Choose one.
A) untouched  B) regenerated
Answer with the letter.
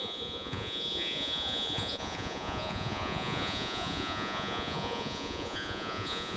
B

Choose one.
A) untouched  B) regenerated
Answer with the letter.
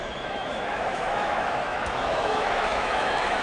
B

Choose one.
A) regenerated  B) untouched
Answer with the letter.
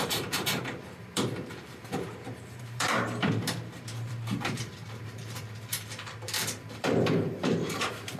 A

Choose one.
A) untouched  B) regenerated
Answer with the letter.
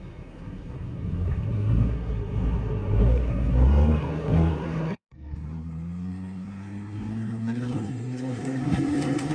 B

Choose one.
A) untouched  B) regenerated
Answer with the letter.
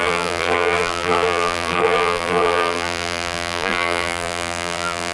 B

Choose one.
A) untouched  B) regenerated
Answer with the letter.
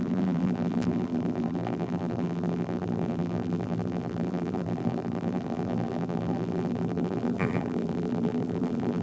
B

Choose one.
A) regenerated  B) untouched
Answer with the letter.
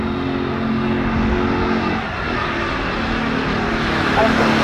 B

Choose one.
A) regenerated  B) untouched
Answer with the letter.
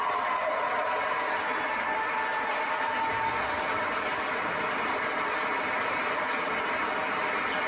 B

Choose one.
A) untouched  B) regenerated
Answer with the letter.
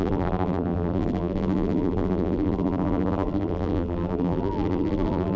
B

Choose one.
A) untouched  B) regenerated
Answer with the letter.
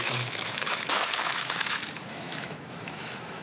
B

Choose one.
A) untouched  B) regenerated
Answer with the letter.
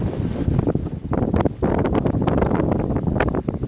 B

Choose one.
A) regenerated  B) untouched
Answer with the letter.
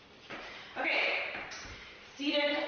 A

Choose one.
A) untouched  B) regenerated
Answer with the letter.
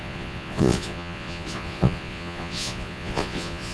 B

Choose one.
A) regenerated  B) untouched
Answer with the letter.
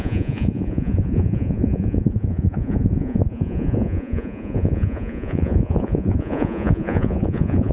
A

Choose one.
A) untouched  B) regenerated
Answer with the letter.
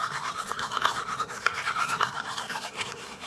B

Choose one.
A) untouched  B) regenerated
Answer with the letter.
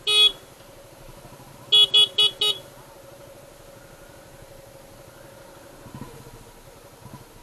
A